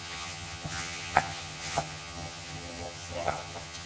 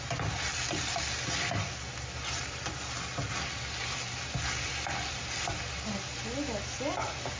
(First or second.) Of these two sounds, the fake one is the first